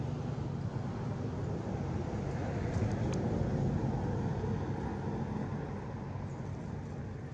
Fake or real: real